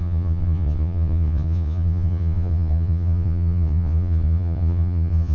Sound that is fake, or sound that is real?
fake